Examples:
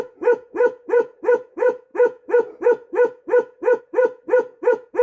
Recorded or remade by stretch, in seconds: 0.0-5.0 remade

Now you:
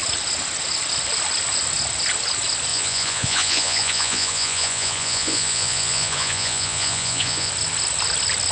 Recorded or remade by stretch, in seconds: 0.0-2.7 recorded; 2.7-7.5 remade; 7.5-8.5 recorded

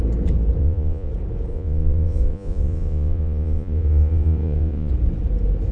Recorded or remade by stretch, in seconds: 0.0-0.6 recorded; 0.6-1.1 remade; 1.1-1.5 recorded; 1.5-4.9 remade; 4.9-5.7 recorded

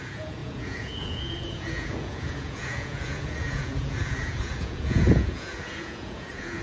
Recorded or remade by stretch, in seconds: 0.0-6.6 remade